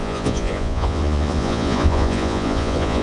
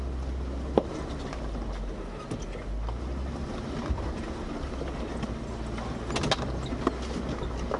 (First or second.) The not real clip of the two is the first